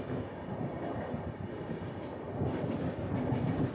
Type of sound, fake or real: real